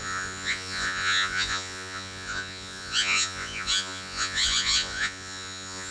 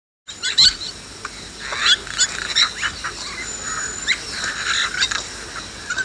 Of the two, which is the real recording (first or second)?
second